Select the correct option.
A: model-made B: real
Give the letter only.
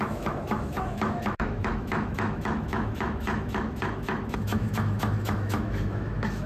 A